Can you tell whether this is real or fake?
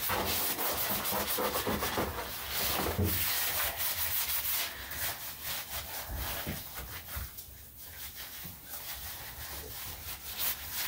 real